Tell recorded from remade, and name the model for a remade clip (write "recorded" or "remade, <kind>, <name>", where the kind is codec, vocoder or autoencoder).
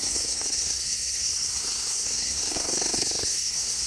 remade, codec, SNAC